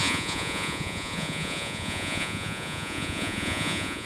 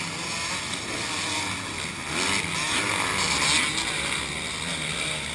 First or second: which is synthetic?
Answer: first